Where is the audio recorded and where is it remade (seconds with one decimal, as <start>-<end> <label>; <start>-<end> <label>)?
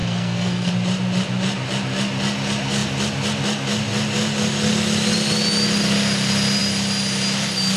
0.0-0.7 remade; 0.7-7.8 recorded